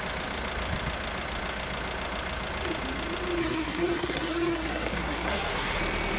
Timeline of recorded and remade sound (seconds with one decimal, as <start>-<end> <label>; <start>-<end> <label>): 0.0-3.4 recorded; 3.4-5.8 remade; 5.8-6.2 recorded